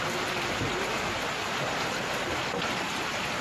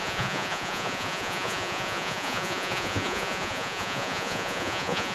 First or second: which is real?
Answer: first